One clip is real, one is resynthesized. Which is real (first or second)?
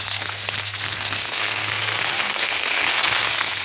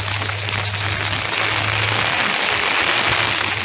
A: second